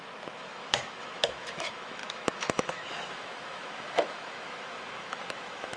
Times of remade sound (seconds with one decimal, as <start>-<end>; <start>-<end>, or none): 0.0-5.8